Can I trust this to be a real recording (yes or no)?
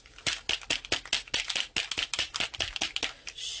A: yes